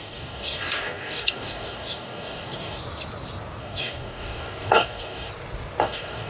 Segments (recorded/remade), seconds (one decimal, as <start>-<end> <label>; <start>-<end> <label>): 0.0-2.8 remade; 2.8-3.6 recorded; 3.6-5.3 remade; 5.3-5.8 recorded; 5.8-6.3 remade